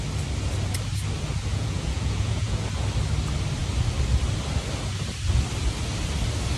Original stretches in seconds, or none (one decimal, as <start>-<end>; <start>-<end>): 0.0-1.5; 2.7-6.6